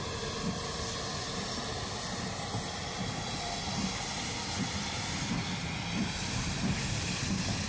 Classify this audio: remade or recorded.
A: recorded